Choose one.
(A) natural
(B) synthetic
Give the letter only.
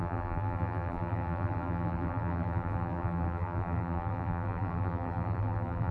B